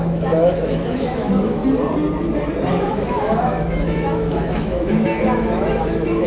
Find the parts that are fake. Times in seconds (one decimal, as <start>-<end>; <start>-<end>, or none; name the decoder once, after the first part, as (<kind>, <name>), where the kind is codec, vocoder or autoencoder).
0.0-1.6 (autoencoder, DAC-VAE); 2.7-6.3